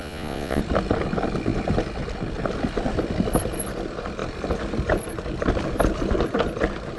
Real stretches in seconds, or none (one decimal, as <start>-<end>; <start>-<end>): 0.6-7.0